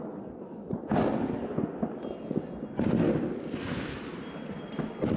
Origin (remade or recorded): recorded